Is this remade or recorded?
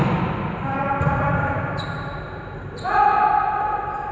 recorded